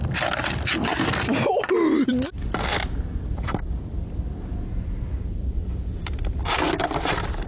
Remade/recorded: recorded